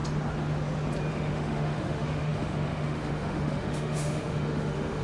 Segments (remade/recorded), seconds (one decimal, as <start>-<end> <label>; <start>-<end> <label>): 0.0-1.1 recorded; 1.1-5.0 remade